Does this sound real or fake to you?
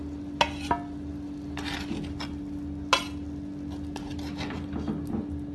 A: real